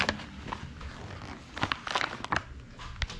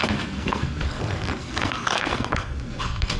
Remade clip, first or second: second